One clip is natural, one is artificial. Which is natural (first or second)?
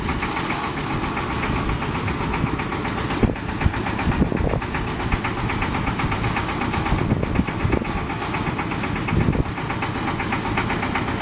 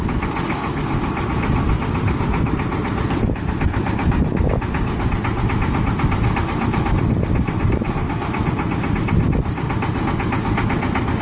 first